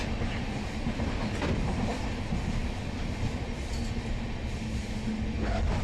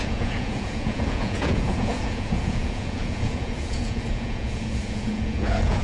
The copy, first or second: second